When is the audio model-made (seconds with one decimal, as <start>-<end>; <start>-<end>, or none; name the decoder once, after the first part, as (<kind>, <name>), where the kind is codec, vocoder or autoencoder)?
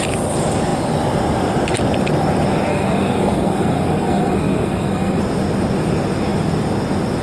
2.7-5.2 (codec, SNAC)